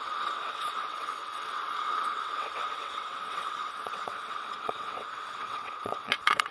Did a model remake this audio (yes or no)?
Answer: yes